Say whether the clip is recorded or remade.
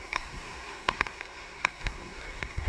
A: remade